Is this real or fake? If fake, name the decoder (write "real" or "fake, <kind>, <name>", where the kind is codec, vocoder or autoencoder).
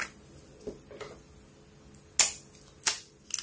real